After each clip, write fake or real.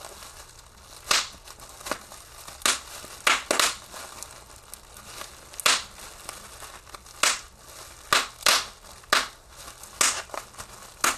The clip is real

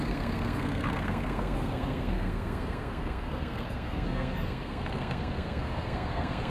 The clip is fake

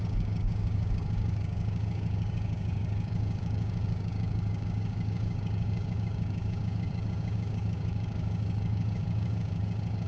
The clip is fake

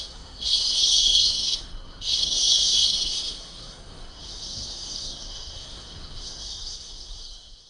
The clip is fake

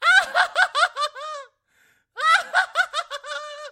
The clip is real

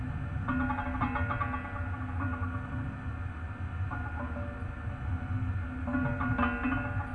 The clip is real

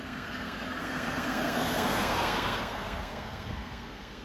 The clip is fake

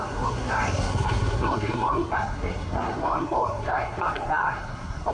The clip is fake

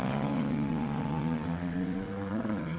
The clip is fake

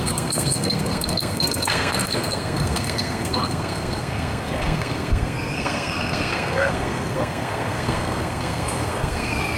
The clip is fake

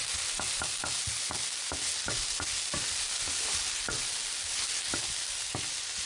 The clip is real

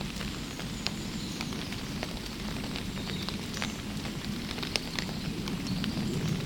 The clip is real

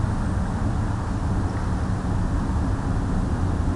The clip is real